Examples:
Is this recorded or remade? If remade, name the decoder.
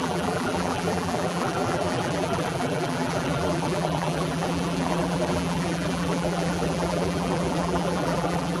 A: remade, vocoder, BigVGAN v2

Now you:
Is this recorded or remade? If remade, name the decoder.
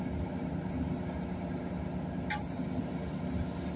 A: recorded